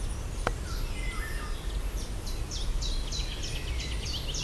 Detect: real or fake real